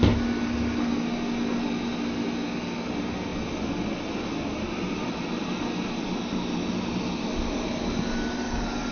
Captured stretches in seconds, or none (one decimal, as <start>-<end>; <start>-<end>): 0.0-8.9